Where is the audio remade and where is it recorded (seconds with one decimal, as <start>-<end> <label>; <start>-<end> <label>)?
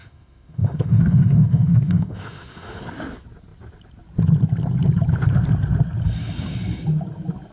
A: 0.0-2.8 remade; 2.8-7.5 recorded